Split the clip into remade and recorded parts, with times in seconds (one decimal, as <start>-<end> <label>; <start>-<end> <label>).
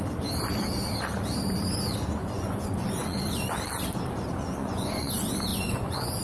0.0-2.2 recorded; 2.2-3.2 remade; 3.2-4.4 recorded; 4.4-5.1 remade; 5.1-5.5 recorded; 5.5-6.2 remade